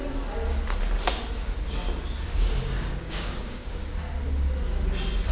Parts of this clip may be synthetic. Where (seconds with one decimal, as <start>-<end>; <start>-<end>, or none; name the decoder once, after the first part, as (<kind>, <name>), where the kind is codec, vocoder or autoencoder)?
2.3-3.9 (codec, DAC)